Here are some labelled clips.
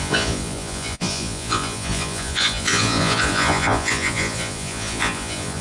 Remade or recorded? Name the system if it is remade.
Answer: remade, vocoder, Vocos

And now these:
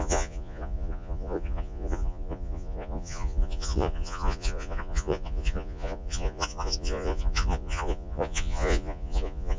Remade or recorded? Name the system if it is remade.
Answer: remade, vocoder, Vocos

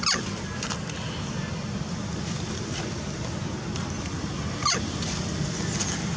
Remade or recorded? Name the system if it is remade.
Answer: recorded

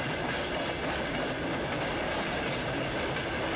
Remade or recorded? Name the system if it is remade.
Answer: recorded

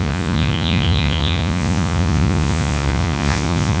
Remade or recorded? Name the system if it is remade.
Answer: remade, vocoder, Vocos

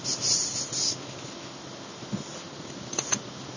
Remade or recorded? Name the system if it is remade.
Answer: recorded